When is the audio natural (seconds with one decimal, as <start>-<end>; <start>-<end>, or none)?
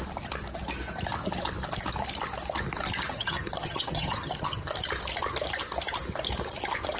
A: 0.0-3.1; 4.7-7.0